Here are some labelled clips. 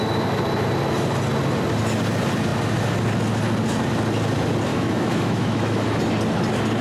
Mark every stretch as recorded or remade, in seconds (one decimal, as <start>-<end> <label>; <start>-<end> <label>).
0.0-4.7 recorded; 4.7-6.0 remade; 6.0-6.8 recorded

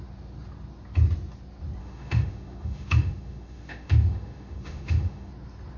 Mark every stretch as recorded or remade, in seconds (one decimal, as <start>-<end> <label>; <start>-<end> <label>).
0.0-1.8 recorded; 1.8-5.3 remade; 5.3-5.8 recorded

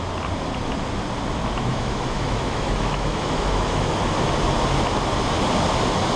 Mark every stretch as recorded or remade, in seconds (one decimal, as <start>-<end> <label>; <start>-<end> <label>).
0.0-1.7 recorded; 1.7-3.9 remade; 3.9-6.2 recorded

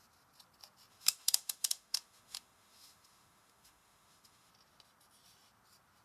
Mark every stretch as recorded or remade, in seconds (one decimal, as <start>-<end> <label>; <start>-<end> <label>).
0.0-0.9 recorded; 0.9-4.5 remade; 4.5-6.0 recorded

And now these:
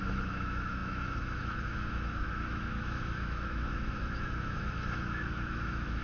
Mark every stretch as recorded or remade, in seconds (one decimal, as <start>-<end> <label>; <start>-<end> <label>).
0.0-6.0 remade